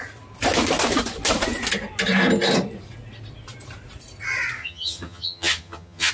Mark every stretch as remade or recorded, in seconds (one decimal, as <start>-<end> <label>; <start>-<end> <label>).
0.0-4.6 recorded; 4.6-6.1 remade